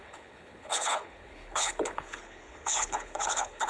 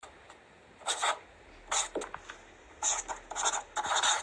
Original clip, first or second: second